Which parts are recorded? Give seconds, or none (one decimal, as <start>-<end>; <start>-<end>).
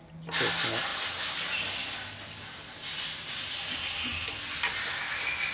0.0-5.5